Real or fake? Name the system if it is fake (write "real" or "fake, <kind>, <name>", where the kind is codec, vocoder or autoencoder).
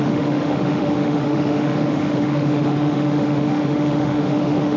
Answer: fake, autoencoder, DAC-VAE